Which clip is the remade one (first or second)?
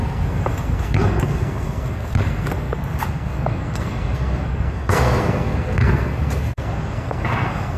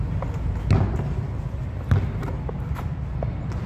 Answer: first